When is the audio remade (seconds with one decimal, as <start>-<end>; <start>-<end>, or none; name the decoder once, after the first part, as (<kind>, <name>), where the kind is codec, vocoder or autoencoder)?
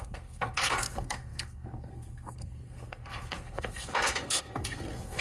0.0-5.2 (codec, SNAC)